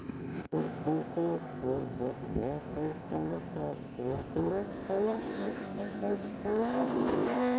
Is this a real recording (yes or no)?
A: no